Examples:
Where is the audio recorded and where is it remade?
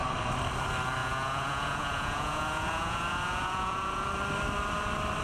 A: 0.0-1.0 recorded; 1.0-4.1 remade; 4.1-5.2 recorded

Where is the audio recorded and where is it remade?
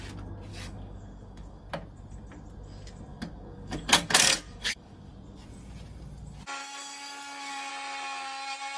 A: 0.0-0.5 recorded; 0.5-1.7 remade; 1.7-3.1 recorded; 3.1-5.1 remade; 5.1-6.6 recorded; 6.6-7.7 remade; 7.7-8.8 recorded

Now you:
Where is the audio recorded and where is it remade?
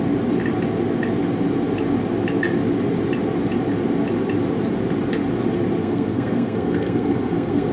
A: 0.0-5.8 recorded; 5.8-7.7 remade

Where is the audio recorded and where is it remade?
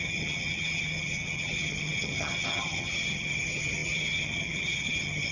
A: 0.0-5.3 remade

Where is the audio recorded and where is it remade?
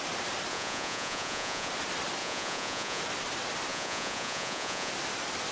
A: 0.0-0.5 recorded; 0.5-1.7 remade; 1.7-2.2 recorded; 2.2-3.0 remade; 3.0-3.7 recorded; 3.7-4.9 remade; 4.9-5.5 recorded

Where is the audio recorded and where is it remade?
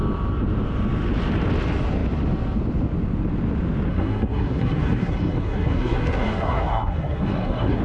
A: 0.0-3.9 recorded; 3.9-7.8 remade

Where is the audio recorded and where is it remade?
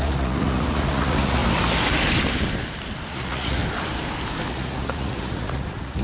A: 0.0-1.4 remade; 1.4-3.1 recorded; 3.1-3.6 remade; 3.6-4.5 recorded; 4.5-6.0 remade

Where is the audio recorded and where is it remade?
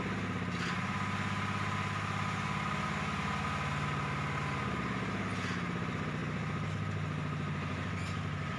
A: 0.0-8.6 recorded